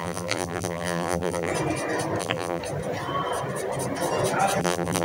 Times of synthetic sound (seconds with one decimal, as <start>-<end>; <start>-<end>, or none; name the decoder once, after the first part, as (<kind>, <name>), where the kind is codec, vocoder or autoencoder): 0.0-1.5 (vocoder, BigVGAN v2); 2.2-2.6; 4.6-5.0